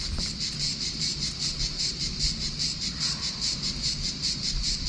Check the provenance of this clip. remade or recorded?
remade